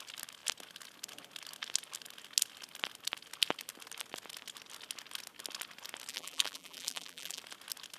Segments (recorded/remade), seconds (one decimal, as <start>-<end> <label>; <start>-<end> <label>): 0.0-6.1 recorded; 6.1-7.4 remade; 7.4-8.0 recorded